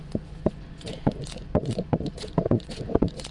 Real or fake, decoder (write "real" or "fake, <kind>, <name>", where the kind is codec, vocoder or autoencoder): fake, vocoder, Vocos